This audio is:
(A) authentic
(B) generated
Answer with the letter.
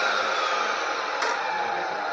A